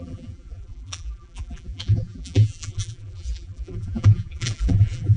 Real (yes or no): no